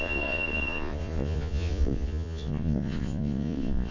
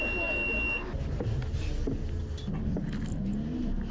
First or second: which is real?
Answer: second